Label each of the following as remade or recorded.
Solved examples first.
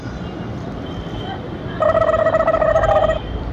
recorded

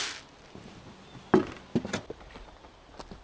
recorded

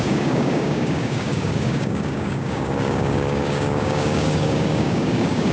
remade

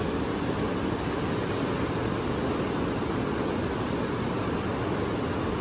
recorded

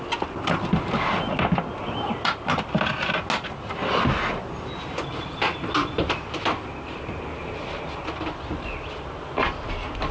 recorded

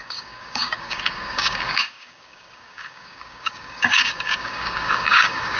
remade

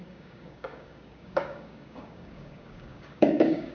remade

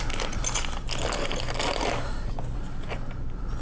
recorded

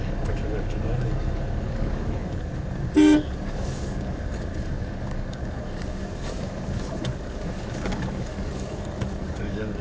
remade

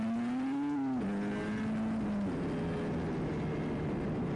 recorded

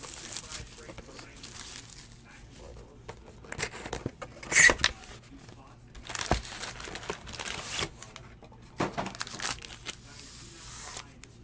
recorded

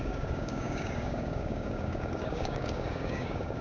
remade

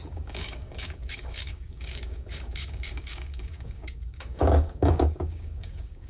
remade